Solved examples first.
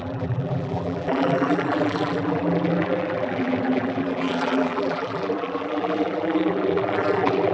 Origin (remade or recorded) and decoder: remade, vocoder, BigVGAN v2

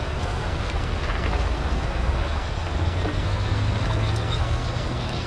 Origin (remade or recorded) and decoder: remade, codec, SNAC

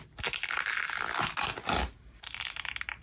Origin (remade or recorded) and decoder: recorded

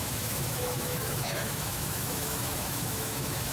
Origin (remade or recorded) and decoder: remade, autoencoder, DAC-VAE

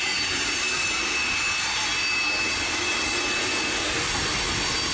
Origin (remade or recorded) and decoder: recorded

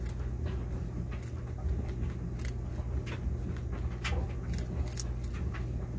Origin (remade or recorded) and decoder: recorded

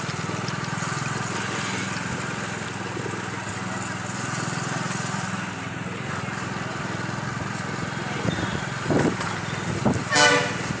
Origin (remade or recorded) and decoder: recorded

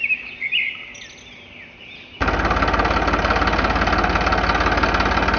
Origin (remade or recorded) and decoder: recorded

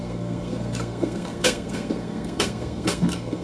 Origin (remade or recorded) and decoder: remade, codec, SNAC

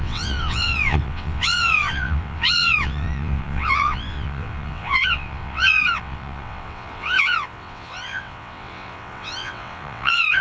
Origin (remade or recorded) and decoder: remade, vocoder, WaveNeXt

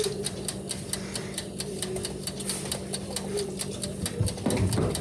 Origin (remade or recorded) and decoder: recorded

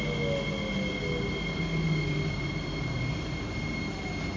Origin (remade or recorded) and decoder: recorded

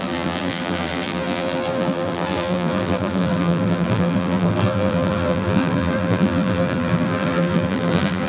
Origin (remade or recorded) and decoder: remade, vocoder, BigVGAN v2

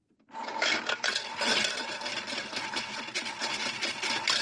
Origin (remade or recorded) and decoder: recorded